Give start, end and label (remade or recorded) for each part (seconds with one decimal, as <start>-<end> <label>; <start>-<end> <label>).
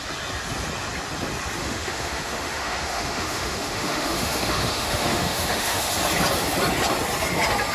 0.0-1.6 recorded; 1.6-5.9 remade; 5.9-7.7 recorded